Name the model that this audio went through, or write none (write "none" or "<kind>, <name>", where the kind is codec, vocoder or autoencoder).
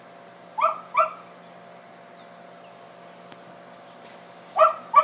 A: none